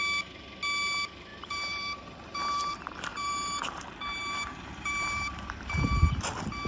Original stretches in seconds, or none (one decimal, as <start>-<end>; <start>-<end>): 0.0-1.3; 2.7-3.1; 6.1-6.7